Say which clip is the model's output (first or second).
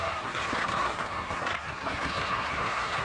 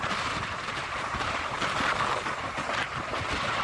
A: first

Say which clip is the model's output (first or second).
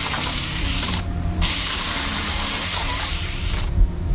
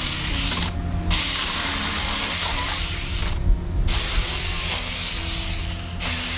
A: first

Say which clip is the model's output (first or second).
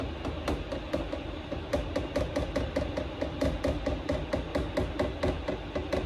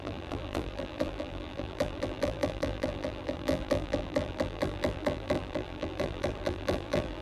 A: second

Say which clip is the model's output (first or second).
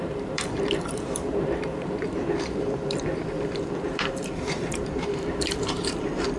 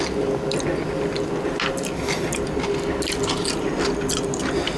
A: first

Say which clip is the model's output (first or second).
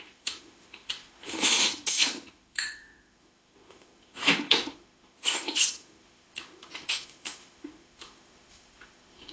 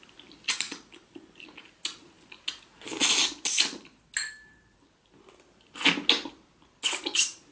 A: first